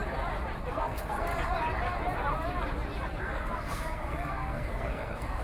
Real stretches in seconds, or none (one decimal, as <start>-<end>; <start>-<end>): 0.0-0.7; 1.3-3.2